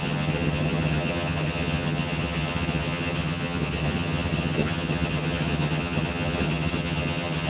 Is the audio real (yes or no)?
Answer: no